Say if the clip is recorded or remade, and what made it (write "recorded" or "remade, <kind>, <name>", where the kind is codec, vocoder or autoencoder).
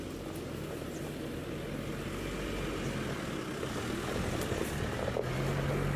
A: recorded